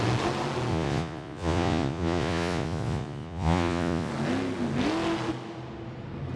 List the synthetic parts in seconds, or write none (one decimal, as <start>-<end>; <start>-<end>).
0.7-4.1